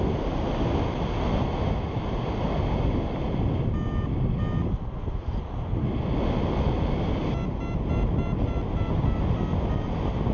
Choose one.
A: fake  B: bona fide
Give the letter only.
B